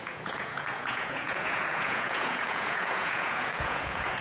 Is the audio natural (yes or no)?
no